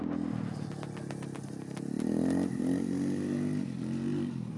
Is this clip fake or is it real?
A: real